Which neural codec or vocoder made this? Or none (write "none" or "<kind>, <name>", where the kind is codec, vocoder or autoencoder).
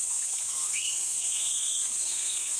codec, SNAC